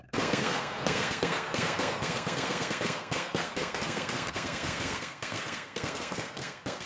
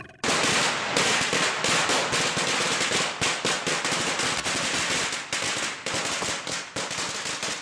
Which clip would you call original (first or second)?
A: second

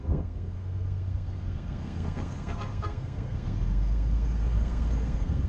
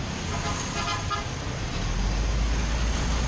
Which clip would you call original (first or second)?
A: second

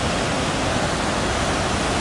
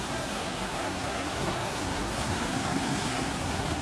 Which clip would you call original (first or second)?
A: first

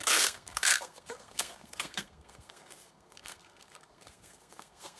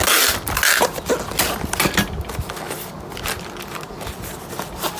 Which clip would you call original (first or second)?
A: second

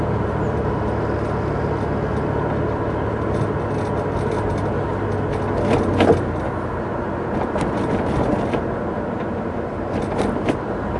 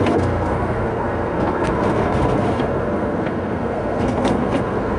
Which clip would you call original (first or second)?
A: first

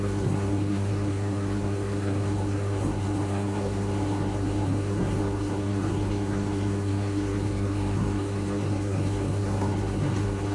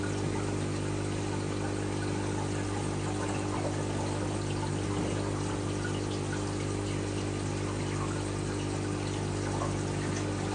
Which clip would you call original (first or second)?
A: second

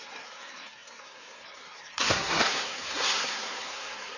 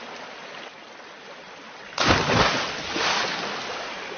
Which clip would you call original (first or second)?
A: second